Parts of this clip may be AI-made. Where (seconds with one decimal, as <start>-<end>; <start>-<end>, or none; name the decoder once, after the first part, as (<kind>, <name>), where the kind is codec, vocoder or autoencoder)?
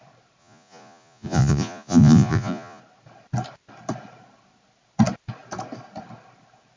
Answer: 0.4-2.8 (vocoder, Vocos)